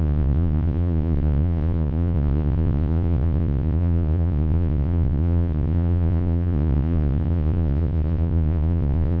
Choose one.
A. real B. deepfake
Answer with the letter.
B